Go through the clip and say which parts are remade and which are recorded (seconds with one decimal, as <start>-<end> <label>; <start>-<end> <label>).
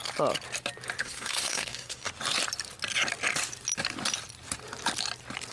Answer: 0.0-1.0 recorded; 1.0-2.1 remade; 2.1-5.5 recorded